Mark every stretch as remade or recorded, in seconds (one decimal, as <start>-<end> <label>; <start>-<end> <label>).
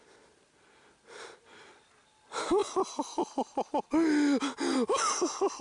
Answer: 0.0-5.6 recorded